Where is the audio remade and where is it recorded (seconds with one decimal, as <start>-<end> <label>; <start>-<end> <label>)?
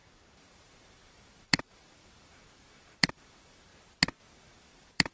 0.0-3.7 remade; 3.7-4.3 recorded; 4.3-5.1 remade